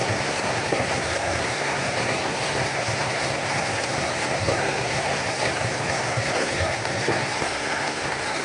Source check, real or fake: fake